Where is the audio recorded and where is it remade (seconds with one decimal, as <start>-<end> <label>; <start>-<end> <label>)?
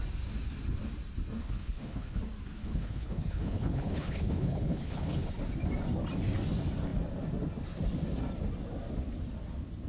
0.0-1.4 recorded; 1.4-2.2 remade; 2.2-2.6 recorded; 2.6-5.3 remade; 5.3-9.9 recorded